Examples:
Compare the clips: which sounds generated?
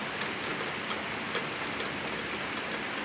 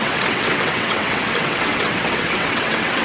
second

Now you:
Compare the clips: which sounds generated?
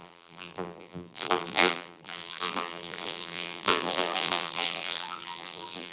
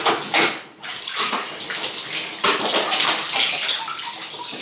first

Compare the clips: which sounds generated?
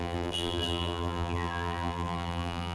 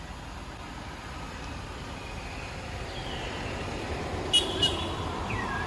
first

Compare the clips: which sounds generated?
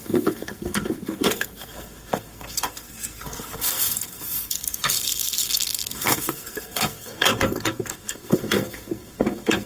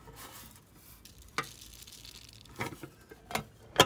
first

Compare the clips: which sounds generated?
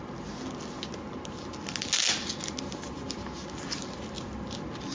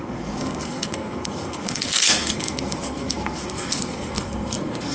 second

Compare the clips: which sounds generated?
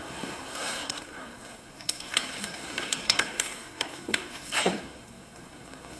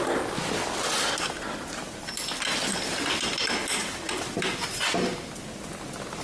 first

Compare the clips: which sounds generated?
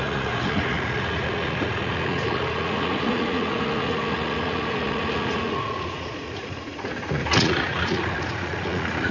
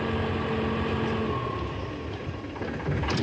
first